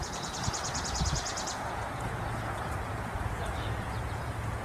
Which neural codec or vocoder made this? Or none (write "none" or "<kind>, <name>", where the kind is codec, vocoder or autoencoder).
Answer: vocoder, Vocos